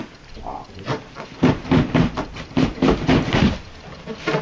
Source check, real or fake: real